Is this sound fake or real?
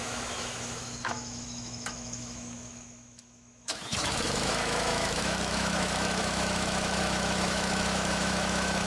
fake